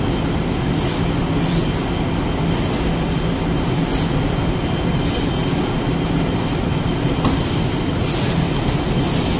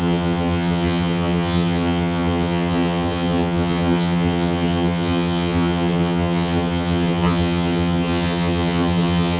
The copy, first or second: second